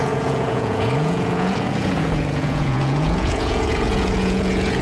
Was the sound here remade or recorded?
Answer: remade